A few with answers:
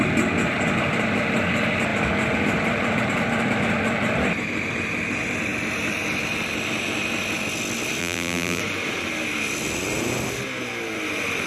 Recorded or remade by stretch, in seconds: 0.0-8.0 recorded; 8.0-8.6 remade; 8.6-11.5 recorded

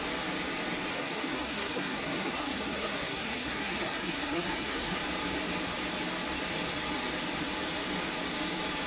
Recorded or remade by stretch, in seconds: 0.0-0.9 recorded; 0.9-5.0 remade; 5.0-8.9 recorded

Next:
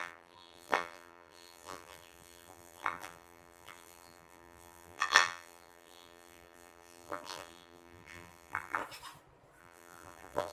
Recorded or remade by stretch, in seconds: 0.0-8.8 remade; 8.8-9.6 recorded; 9.6-10.5 remade